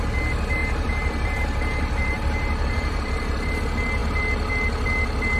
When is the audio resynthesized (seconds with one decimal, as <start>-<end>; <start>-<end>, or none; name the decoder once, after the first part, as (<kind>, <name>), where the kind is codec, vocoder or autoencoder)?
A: 0.6-3.5 (vocoder, BigVGAN v2)